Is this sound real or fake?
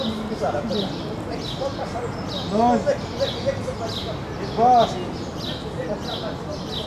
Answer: real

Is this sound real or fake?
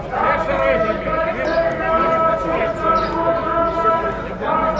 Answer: real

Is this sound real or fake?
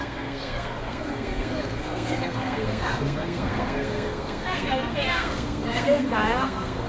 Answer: fake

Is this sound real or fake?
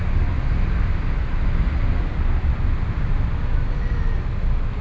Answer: real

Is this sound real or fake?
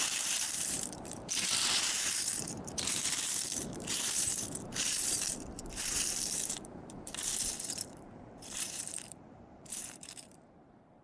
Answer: fake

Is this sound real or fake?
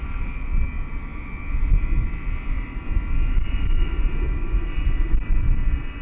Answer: real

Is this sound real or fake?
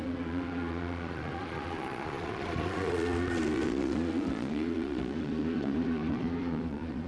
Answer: fake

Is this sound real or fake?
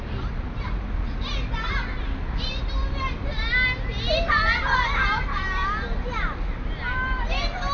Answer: real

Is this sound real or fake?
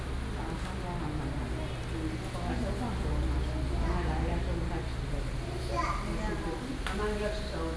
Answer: real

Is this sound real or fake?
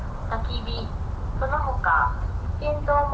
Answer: real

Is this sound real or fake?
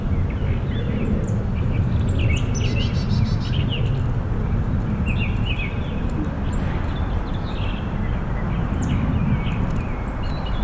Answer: real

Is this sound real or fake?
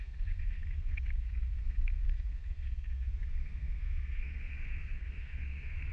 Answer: fake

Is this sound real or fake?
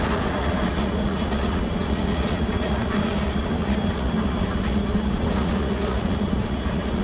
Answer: fake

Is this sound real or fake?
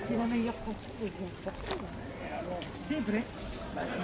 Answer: real